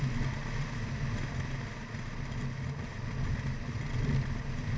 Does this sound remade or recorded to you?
recorded